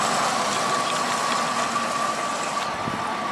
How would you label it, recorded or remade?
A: recorded